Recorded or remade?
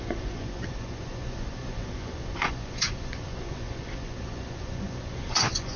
remade